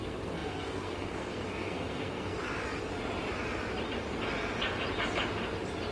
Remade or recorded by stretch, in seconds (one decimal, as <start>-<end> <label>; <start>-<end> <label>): 0.0-2.4 remade; 2.4-5.9 recorded

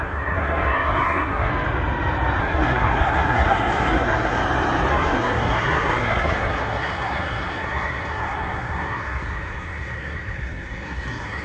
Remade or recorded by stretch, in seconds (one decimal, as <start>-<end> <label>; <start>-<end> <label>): 0.0-1.5 remade; 1.5-2.4 recorded; 2.4-4.4 remade; 4.4-4.9 recorded; 4.9-11.4 remade

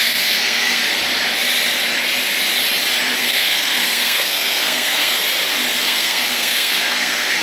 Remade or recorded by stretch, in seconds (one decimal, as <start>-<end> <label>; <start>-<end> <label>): 0.0-0.8 remade; 0.8-3.2 recorded; 3.2-5.2 remade; 5.2-5.8 recorded; 5.8-7.4 remade

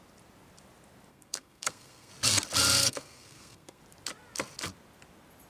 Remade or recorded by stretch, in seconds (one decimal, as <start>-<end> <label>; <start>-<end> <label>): 0.0-1.1 recorded; 1.1-2.1 remade; 2.1-2.8 recorded; 2.8-3.8 remade; 3.8-5.5 recorded

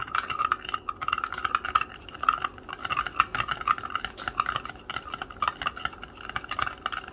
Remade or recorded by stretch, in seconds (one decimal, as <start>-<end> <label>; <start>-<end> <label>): 0.0-7.1 recorded

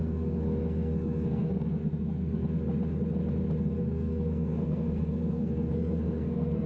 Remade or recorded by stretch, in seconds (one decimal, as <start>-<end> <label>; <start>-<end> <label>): 0.0-2.4 remade; 2.4-3.6 recorded; 3.6-6.7 remade

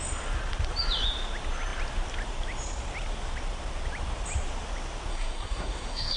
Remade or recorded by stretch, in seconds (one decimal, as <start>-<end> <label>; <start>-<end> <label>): 0.0-5.1 recorded; 5.1-6.2 remade

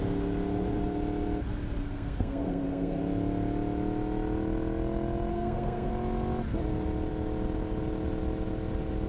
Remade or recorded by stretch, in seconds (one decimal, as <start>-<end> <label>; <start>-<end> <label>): 0.0-1.8 recorded; 1.8-3.0 remade; 3.0-5.3 recorded; 5.3-5.9 remade; 5.9-9.1 recorded